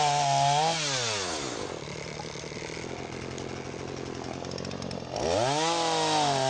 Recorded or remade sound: recorded